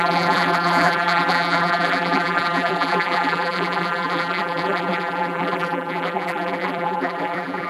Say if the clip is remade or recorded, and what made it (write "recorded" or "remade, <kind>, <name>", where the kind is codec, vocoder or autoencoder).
remade, vocoder, BigVGAN v2